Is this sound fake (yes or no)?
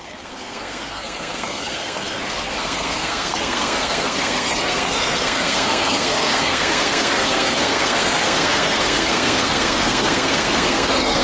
yes